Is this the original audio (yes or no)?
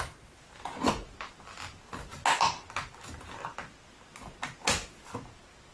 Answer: yes